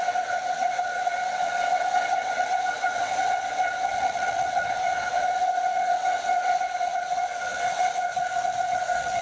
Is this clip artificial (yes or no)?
yes